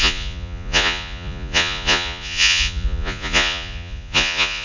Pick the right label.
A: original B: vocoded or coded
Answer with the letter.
B